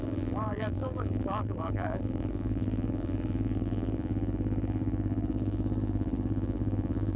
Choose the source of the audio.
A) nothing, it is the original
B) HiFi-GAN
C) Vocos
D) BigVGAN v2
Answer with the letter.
D